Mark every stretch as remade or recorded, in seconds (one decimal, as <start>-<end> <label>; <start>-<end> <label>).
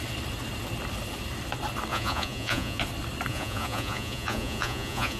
0.0-1.9 recorded; 1.9-2.8 remade; 2.8-3.3 recorded; 3.3-5.2 remade